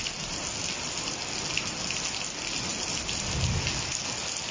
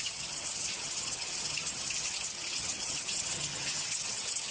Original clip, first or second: first